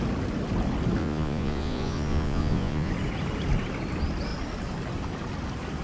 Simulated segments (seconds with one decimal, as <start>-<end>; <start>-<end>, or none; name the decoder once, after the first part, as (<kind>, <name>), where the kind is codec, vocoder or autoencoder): 1.0-2.9 (vocoder, Vocos)